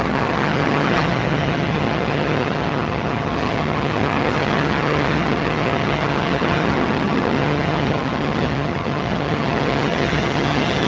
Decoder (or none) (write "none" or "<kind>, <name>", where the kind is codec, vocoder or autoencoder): vocoder, HiFi-GAN